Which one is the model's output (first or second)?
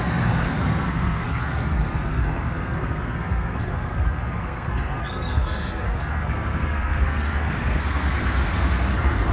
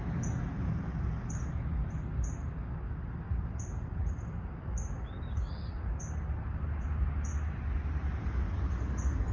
first